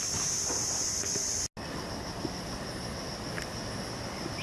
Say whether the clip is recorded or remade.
recorded